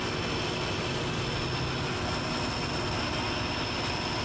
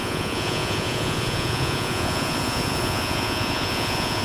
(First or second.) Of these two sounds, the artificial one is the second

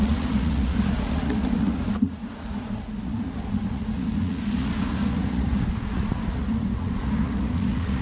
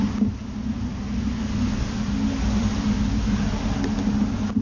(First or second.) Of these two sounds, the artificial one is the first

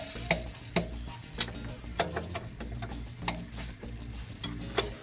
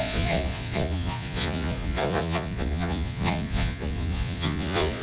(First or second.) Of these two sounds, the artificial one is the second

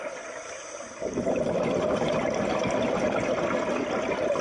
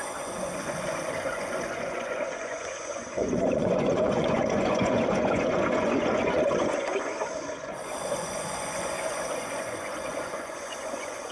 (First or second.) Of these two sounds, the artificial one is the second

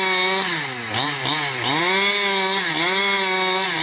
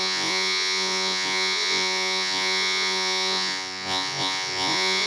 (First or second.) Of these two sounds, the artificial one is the second